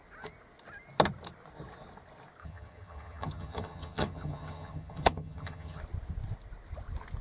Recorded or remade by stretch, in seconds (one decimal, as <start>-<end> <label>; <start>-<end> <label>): 0.0-2.4 recorded; 2.4-5.8 remade; 5.8-7.2 recorded